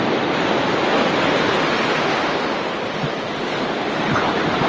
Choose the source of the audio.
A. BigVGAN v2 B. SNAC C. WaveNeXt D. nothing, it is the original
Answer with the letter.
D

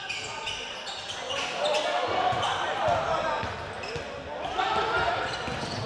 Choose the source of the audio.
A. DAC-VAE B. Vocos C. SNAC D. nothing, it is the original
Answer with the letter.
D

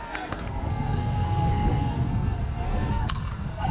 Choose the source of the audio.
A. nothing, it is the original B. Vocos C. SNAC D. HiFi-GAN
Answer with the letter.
C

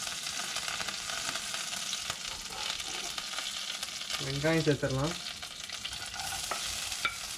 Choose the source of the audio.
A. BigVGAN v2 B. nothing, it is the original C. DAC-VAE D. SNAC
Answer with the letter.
B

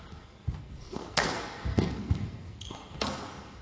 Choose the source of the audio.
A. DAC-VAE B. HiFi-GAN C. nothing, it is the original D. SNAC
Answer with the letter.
D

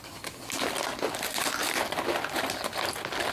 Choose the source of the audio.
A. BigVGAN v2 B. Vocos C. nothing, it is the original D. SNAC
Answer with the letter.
C